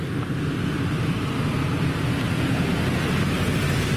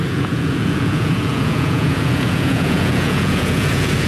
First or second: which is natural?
first